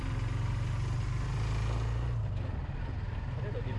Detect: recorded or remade recorded